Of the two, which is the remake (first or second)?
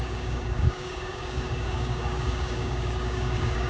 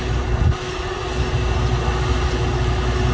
first